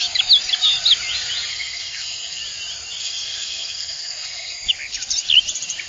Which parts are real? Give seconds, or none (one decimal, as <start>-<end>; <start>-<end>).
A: 0.0-1.5; 2.4-3.0; 4.7-5.9

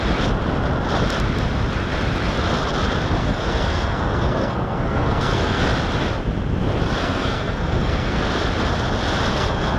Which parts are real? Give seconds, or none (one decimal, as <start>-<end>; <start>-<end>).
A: 0.0-3.2; 5.6-7.0; 8.3-9.3

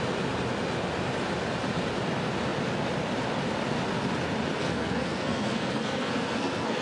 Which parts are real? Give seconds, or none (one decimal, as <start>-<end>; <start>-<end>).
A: 0.0-4.6

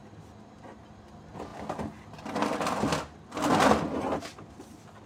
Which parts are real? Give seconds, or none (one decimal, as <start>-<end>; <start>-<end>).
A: 0.0-5.1

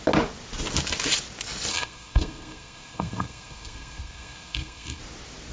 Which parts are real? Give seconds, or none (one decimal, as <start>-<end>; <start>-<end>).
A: 0.0-1.7; 5.0-5.5